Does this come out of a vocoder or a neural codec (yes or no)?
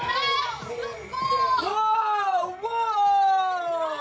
no